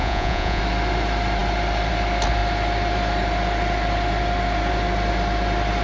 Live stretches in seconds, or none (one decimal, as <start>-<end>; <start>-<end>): 0.6-5.8